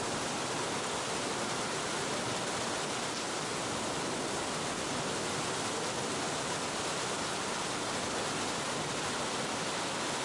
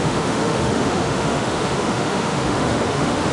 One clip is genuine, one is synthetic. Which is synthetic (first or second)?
second